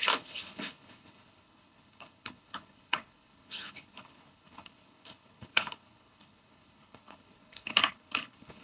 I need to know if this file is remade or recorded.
remade